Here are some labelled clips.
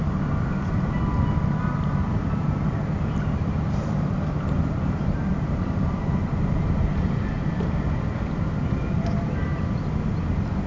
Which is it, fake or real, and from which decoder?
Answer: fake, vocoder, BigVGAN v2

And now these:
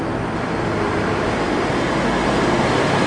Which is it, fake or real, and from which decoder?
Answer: real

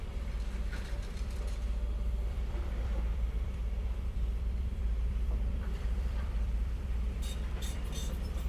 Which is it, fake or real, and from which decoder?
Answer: fake, vocoder, BigVGAN v2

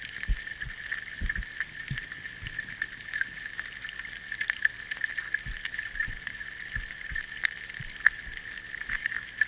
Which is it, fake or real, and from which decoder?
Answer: real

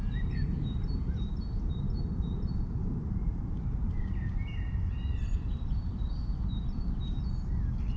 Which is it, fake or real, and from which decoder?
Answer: fake, vocoder, BigVGAN v2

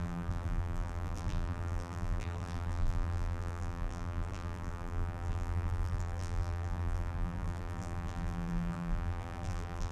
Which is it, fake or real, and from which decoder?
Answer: fake, vocoder, BigVGAN v2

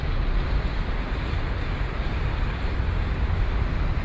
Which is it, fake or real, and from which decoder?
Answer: real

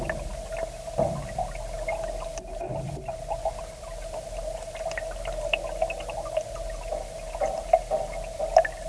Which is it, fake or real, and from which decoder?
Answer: real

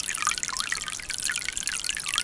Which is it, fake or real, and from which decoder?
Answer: real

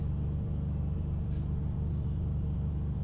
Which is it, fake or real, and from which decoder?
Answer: fake, vocoder, BigVGAN v2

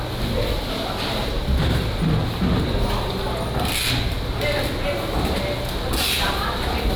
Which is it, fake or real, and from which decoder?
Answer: real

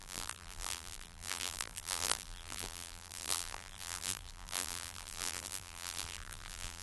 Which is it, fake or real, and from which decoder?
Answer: fake, vocoder, BigVGAN v2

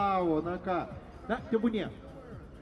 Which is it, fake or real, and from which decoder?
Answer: real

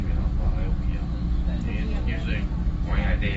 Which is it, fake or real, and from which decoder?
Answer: real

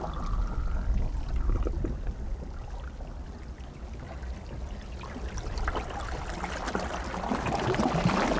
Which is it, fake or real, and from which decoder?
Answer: real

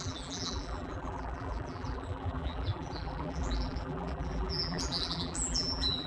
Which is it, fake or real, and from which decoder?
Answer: fake, vocoder, BigVGAN v2